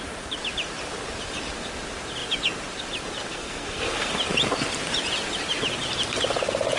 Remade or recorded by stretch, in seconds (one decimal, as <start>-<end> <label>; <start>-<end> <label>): 0.0-3.3 recorded; 3.3-4.1 remade; 4.1-6.8 recorded